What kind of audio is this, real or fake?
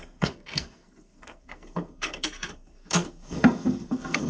fake